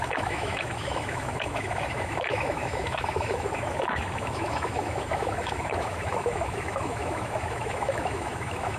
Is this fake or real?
fake